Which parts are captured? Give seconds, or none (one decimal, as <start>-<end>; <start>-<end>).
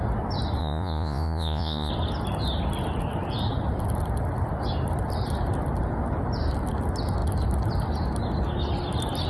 0.0-0.6; 1.9-9.3